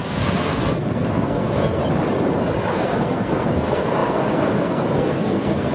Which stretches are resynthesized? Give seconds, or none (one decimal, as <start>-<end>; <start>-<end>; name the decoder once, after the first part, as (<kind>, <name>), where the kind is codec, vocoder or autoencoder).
0.0-1.8 (codec, SNAC); 2.7-5.7